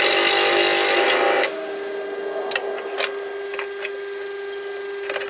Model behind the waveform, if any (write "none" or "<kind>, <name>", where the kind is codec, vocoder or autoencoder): none